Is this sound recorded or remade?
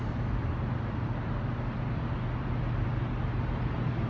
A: recorded